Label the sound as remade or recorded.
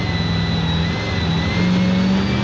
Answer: recorded